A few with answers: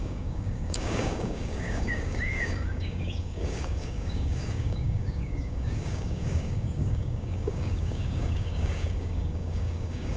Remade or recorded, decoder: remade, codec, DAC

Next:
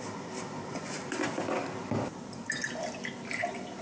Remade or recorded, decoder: recorded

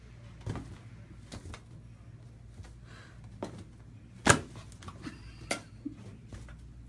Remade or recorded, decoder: recorded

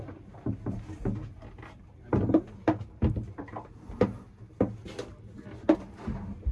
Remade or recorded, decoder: recorded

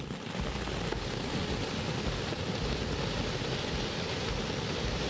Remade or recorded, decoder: recorded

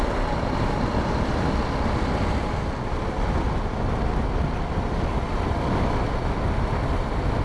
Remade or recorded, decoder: recorded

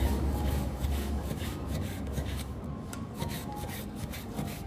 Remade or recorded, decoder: remade, codec, DAC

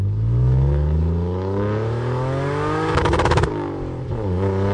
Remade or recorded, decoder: remade, codec, DAC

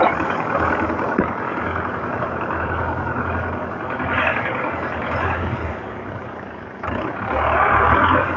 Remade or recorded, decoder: remade, codec, DAC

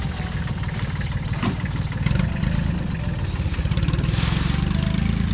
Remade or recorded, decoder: recorded